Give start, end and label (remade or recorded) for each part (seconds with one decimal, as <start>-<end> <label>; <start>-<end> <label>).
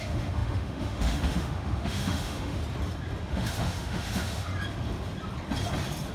0.0-2.6 remade; 2.6-3.3 recorded; 3.3-4.5 remade; 4.5-6.1 recorded